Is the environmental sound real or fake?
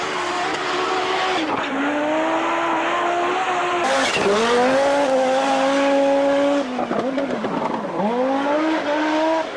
real